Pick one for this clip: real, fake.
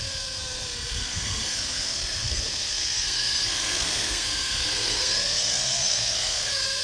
fake